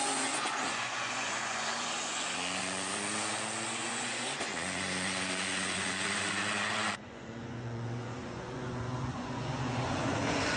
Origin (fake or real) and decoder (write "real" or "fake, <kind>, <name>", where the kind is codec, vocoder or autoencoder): fake, vocoder, Vocos